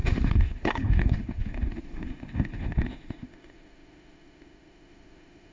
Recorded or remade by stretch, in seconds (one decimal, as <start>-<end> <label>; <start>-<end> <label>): 0.0-5.5 remade